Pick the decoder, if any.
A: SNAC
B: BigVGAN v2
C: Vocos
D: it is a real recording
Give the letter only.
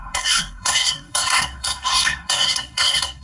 A